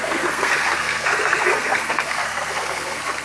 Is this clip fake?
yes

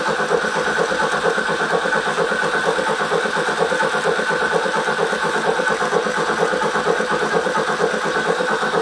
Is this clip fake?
no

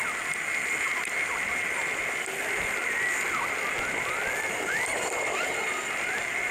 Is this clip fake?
no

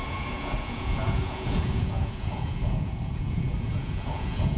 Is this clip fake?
yes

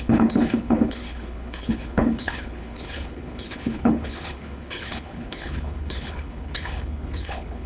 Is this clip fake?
yes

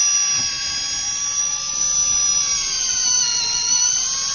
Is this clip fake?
no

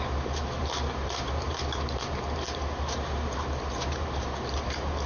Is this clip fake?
yes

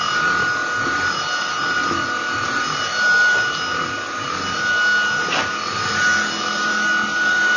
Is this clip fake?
no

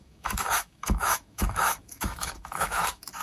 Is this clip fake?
yes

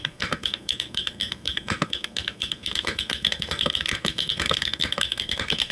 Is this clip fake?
yes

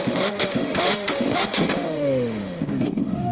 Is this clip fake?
yes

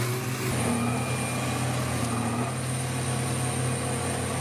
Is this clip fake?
no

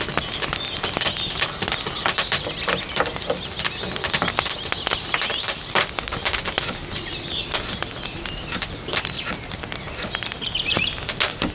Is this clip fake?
no